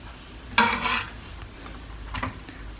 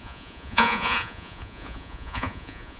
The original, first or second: first